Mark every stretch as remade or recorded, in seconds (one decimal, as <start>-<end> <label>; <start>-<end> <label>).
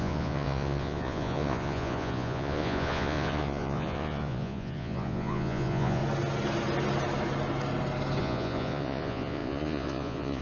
0.0-6.0 remade; 6.0-8.2 recorded; 8.2-10.4 remade